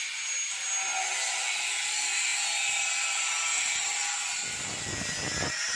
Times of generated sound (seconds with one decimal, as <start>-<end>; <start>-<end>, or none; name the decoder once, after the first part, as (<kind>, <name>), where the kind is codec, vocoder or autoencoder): none